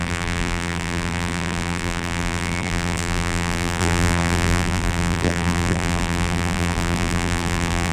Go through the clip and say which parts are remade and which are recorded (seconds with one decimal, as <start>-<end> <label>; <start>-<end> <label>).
0.0-7.9 remade